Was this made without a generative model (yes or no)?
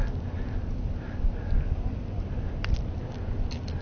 no